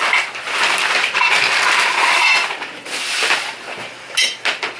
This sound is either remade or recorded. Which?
recorded